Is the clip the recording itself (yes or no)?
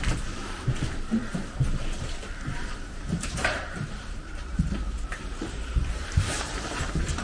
no